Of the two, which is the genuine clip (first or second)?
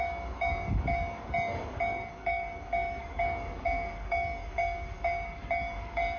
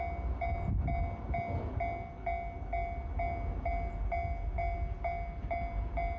second